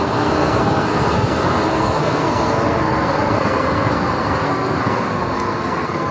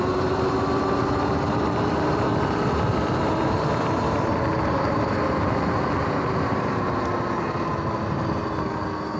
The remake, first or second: first